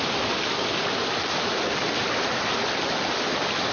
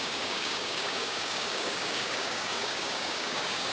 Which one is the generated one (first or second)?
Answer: second